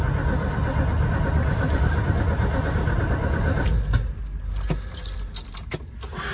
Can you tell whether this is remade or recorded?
recorded